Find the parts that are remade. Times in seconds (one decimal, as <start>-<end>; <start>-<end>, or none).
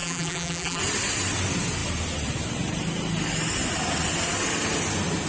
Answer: 0.0-0.8